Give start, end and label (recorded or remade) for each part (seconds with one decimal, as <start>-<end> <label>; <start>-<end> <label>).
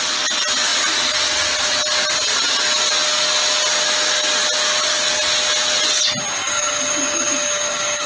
0.0-6.4 recorded; 6.4-8.1 remade